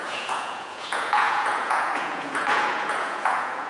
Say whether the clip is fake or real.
fake